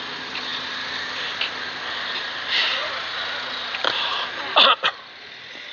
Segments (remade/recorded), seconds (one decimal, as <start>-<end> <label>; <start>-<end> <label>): 0.0-5.7 recorded